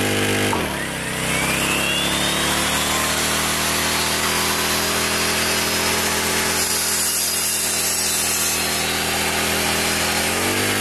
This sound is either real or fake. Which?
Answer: real